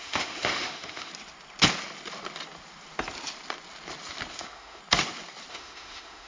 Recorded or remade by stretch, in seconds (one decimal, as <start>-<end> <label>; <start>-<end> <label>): 0.0-1.1 remade; 1.1-4.3 recorded; 4.3-4.8 remade; 4.8-5.5 recorded; 5.5-6.3 remade